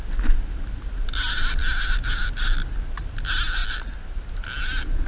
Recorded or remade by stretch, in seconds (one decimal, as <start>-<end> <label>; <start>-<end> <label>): 0.0-5.1 recorded